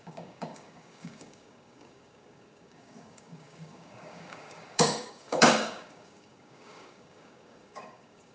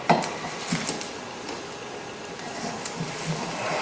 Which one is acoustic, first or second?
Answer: second